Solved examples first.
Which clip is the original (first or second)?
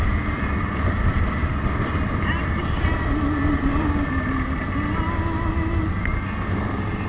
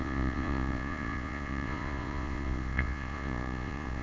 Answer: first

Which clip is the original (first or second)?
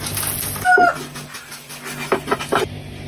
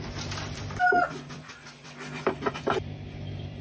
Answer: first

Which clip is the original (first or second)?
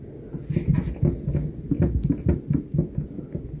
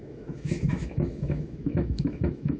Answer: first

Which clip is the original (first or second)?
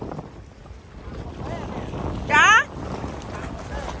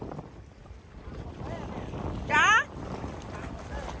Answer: first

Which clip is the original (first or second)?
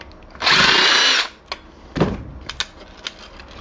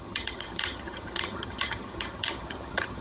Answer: first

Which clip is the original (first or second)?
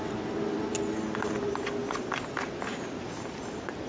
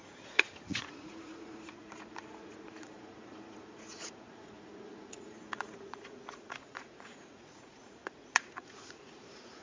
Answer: first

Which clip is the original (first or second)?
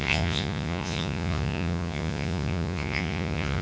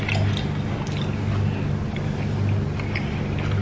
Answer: second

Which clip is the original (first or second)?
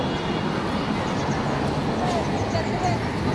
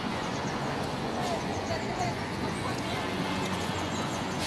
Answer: first